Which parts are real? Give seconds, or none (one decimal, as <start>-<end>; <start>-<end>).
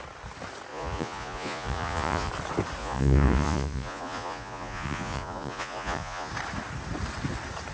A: 0.0-0.7; 2.3-2.8; 6.3-7.7